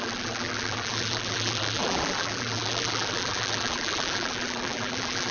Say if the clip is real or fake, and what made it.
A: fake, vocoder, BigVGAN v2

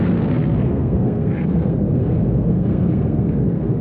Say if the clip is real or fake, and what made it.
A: fake, codec, SNAC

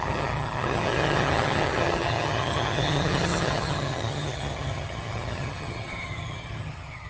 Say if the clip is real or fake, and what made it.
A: fake, vocoder, HiFi-GAN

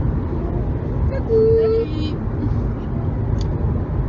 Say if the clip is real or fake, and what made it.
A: real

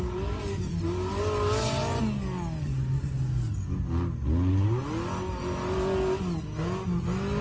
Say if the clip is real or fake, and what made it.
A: real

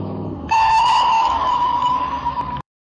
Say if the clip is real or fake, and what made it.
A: fake, codec, DAC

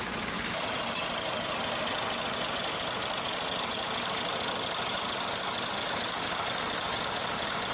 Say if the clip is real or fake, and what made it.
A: real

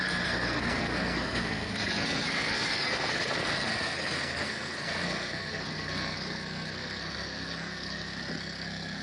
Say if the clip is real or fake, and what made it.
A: fake, codec, SNAC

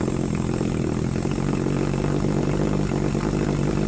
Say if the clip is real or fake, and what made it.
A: real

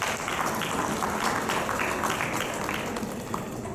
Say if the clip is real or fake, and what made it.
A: real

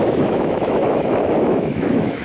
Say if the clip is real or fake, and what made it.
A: fake, autoencoder, DAC-VAE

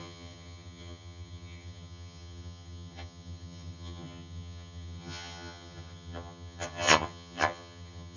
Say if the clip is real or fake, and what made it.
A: fake, vocoder, HiFi-GAN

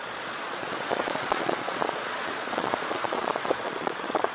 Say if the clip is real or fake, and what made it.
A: fake, vocoder, Vocos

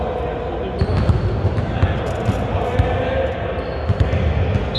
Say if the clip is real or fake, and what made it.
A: real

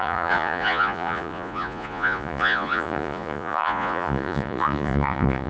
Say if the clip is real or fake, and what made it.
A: fake, vocoder, Vocos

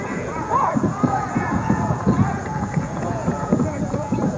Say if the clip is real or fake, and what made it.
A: fake, vocoder, Vocos